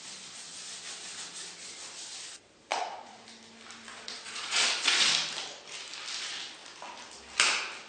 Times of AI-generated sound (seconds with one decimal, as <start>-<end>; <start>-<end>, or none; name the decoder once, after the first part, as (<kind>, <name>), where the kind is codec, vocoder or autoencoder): 2.7-3.2 (vocoder, Vocos); 3.9-5.1